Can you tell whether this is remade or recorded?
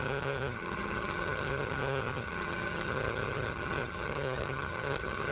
remade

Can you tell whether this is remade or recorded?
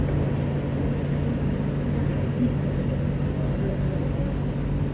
recorded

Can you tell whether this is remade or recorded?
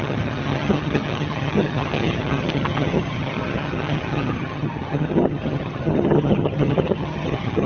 remade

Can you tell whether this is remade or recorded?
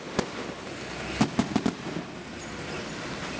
recorded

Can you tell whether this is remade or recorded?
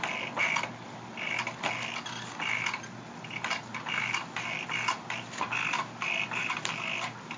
recorded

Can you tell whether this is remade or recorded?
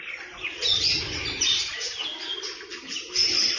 recorded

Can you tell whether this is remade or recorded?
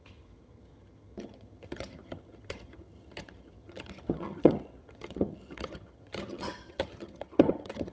remade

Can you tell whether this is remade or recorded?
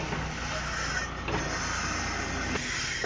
recorded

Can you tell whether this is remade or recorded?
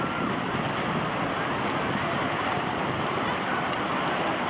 recorded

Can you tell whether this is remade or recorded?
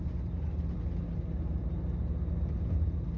recorded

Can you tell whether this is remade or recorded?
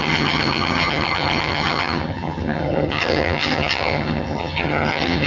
remade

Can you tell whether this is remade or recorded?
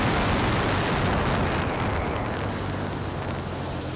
recorded